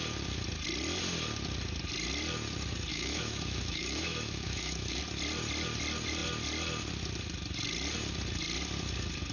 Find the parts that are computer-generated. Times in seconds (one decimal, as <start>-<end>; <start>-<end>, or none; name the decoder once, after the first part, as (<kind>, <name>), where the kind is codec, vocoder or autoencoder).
2.9-5.0 (autoencoder, DAC-VAE)